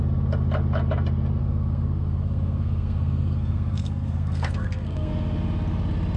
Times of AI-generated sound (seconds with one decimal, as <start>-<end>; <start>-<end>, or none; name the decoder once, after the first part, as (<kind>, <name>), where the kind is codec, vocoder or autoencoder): 1.4-5.1 (codec, SNAC)